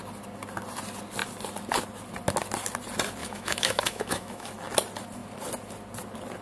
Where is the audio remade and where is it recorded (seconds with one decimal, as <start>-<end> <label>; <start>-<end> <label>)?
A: 0.0-3.2 recorded; 3.2-4.5 remade; 4.5-6.4 recorded